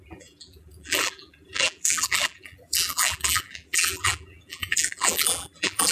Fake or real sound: fake